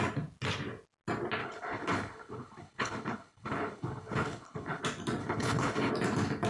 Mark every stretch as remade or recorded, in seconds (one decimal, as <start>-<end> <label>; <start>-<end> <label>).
0.0-1.4 recorded; 1.4-4.8 remade; 4.8-5.2 recorded; 5.2-5.9 remade; 5.9-6.5 recorded